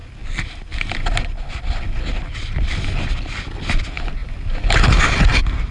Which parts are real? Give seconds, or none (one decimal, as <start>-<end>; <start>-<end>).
0.0-5.7